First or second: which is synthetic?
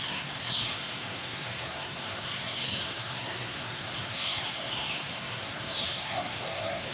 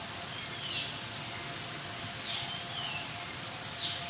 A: first